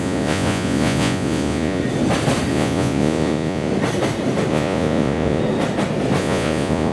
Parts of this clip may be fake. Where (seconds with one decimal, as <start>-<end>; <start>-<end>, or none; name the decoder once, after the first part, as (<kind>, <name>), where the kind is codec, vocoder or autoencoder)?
0.0-1.8 (vocoder, Vocos); 2.5-3.7; 4.5-5.4; 6.2-6.9